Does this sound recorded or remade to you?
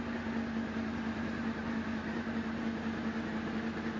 recorded